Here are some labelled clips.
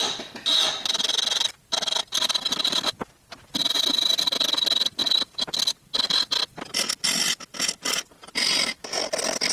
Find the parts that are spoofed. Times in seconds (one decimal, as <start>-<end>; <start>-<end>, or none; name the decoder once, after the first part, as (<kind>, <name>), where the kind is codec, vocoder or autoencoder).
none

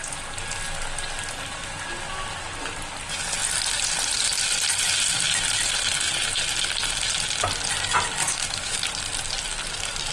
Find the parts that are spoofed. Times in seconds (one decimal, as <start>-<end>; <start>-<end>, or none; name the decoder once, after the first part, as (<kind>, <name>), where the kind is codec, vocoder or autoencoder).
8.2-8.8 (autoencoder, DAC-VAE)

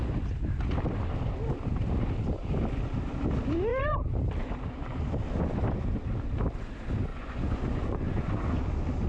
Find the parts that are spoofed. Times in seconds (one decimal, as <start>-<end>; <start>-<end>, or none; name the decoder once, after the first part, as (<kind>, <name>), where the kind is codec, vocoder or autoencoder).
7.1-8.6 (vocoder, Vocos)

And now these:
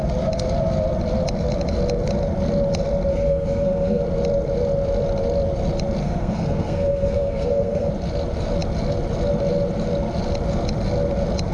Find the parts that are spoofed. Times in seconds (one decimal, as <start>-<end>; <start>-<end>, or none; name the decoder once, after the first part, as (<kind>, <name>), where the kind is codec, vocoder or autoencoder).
3.1-4.0 (codec, SNAC); 6.0-7.9